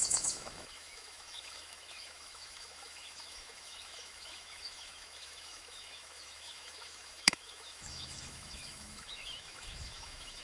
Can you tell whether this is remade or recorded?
remade